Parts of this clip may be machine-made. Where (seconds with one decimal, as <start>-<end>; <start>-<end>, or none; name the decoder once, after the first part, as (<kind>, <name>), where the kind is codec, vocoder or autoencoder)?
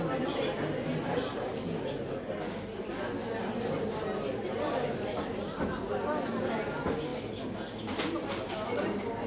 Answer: none